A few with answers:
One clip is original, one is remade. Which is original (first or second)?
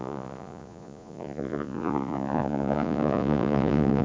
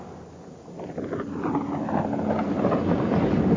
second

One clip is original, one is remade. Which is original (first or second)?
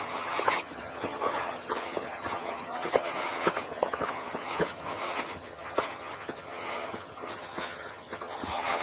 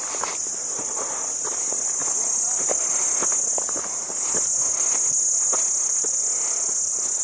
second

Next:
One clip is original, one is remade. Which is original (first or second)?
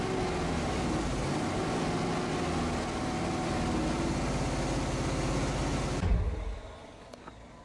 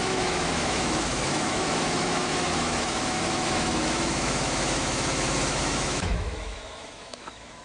first